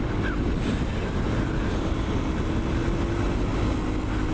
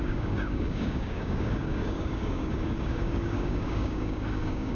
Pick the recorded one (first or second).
first